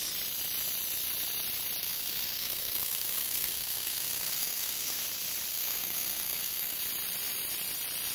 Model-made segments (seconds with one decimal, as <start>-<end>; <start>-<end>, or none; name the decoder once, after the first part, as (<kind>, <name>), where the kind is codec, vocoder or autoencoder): 1.8-5.0 (codec, SNAC); 5.5-6.8